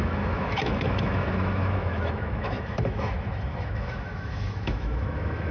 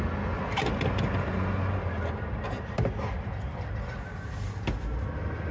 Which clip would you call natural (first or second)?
second